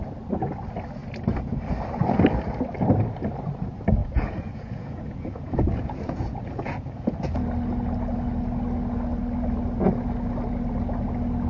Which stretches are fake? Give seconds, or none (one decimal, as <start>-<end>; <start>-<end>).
4.0-7.4